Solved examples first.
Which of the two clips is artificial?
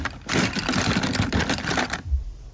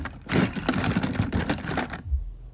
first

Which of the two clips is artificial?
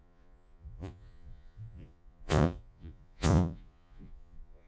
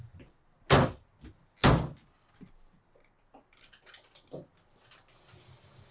first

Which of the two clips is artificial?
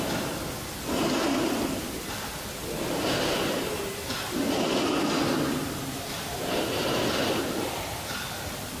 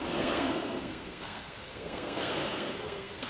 second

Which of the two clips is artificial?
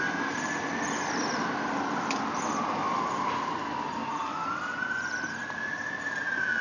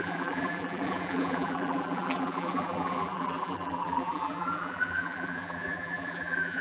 second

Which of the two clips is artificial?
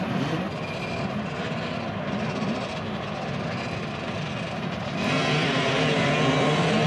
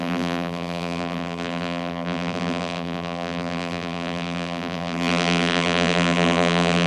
second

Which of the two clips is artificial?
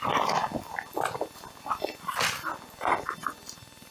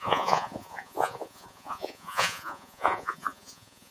second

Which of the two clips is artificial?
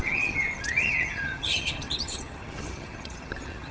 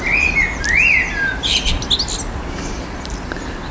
first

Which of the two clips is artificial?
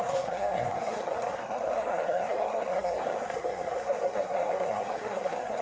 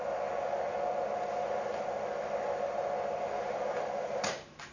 first